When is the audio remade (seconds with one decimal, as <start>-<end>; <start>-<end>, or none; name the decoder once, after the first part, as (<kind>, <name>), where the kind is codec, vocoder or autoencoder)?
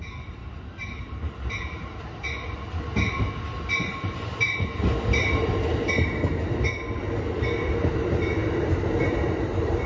none